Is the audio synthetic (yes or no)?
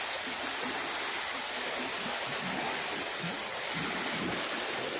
no